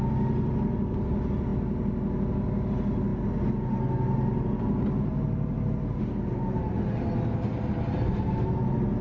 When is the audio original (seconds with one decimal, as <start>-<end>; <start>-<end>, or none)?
0.0-9.0